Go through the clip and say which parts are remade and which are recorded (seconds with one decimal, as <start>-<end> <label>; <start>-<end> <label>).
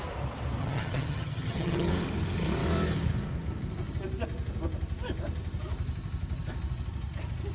0.0-0.6 recorded; 0.6-1.9 remade; 1.9-7.5 recorded